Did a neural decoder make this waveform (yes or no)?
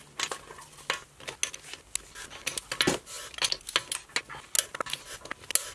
no